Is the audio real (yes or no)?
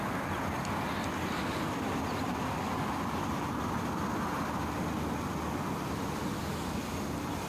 yes